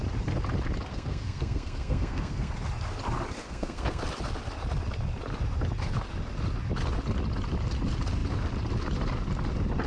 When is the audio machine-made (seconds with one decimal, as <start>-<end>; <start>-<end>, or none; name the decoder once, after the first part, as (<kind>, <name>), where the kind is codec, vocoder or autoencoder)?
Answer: 0.9-2.5 (codec, SNAC); 3.4-4.0